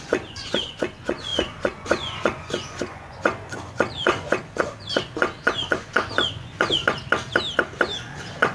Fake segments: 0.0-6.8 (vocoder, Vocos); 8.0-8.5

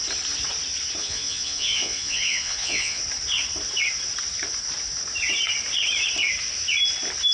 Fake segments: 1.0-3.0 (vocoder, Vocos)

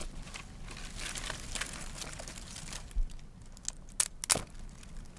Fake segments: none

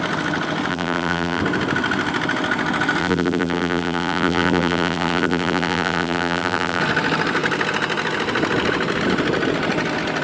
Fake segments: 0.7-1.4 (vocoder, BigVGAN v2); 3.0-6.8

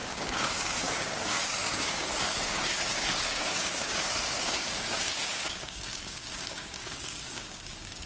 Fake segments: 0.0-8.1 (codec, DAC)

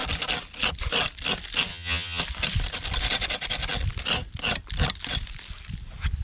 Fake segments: 1.7-2.2 (vocoder, HiFi-GAN)